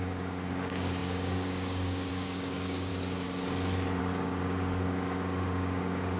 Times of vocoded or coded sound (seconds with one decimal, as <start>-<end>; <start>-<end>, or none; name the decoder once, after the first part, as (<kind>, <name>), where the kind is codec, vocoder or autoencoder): 0.0-2.9 (codec, DAC); 4.0-6.2